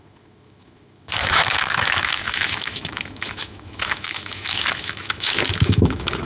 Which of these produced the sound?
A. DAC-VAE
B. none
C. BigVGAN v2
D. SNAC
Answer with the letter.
A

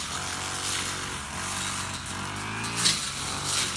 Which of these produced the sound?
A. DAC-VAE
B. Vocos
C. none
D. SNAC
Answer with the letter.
C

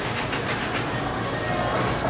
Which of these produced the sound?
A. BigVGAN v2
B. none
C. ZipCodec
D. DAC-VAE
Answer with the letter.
B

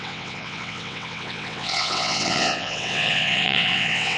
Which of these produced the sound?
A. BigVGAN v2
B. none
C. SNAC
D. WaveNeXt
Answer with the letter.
D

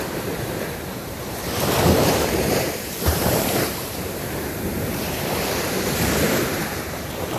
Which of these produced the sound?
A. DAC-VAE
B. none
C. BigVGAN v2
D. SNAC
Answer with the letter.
C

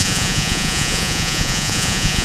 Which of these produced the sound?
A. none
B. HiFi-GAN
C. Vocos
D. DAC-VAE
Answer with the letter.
C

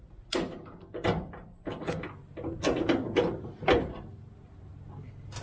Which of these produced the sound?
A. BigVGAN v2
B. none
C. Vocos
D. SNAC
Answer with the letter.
B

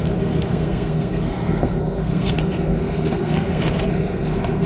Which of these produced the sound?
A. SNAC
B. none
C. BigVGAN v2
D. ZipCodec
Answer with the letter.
A